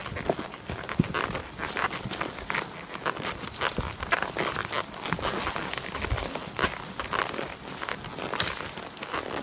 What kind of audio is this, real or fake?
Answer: real